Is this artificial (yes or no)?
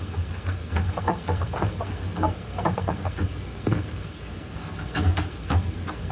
yes